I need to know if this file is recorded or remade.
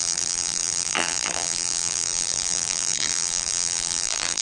remade